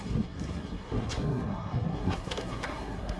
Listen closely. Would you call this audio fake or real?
fake